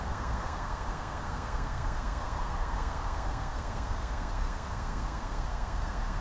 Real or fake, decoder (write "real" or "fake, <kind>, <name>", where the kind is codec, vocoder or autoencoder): fake, codec, SNAC